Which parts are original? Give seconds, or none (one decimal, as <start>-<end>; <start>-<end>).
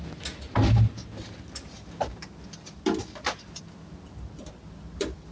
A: 0.0-5.3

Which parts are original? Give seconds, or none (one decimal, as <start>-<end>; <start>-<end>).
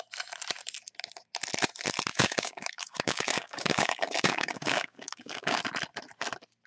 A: 0.0-2.1; 5.6-6.7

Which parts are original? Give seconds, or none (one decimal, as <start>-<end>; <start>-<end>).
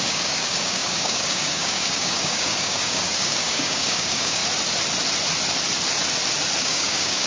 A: 4.4-6.6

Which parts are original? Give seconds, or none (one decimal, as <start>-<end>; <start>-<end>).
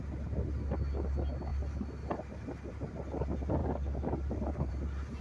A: 0.0-3.6; 4.7-5.2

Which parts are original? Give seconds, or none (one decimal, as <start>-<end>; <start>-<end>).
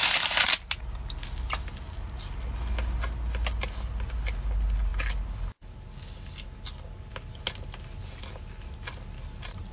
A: 0.0-9.7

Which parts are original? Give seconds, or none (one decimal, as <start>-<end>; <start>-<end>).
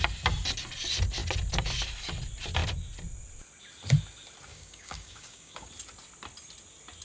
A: 0.0-4.5; 5.7-7.0